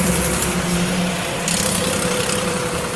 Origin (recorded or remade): remade